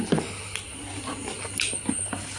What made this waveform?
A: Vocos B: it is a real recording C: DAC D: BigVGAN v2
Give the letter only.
B